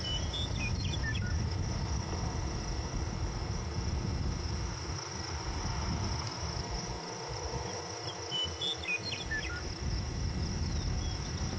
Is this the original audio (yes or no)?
yes